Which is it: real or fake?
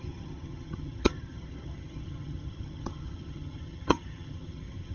fake